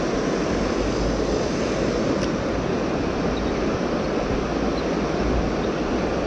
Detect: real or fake real